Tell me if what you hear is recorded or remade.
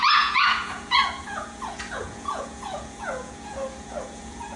remade